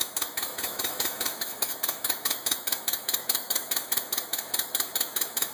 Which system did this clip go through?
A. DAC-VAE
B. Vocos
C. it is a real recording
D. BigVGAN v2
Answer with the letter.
A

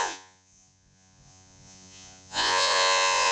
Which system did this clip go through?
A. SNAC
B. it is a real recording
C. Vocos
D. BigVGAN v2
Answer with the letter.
C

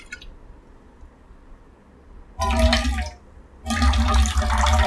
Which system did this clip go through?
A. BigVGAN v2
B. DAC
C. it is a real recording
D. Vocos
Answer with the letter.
C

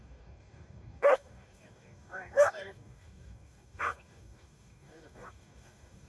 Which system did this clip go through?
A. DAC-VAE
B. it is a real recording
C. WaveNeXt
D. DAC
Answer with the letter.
D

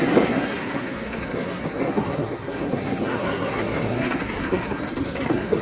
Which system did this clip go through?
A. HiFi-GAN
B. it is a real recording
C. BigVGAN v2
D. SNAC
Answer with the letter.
D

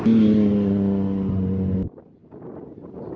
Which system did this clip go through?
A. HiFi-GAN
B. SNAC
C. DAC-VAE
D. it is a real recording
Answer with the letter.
D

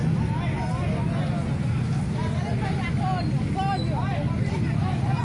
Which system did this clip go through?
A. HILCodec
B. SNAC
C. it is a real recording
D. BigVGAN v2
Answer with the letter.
C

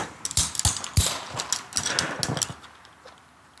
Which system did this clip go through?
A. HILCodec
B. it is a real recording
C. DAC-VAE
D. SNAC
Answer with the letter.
B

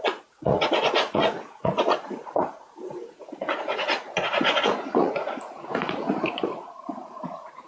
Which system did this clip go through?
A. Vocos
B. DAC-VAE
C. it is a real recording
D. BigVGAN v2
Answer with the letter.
A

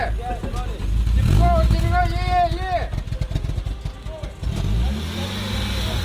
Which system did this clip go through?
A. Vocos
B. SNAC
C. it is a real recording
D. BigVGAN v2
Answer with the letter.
C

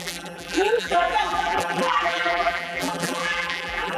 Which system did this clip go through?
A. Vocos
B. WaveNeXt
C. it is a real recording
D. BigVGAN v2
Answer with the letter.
D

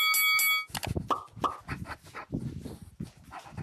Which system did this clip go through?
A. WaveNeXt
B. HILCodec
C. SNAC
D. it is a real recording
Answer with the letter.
D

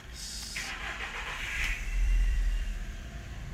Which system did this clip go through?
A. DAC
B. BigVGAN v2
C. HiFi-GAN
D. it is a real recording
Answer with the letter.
B